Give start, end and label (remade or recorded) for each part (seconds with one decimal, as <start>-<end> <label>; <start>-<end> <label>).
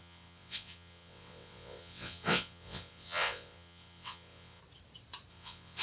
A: 0.0-4.6 remade; 4.6-5.3 recorded; 5.3-5.8 remade